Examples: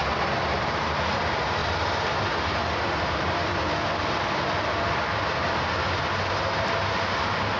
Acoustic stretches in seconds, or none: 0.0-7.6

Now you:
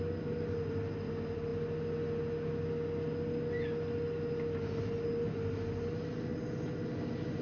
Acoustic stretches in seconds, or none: 0.0-7.4